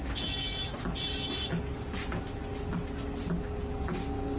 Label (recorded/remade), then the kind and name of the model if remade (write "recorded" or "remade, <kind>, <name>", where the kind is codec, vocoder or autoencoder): recorded